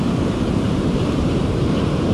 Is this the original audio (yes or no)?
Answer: no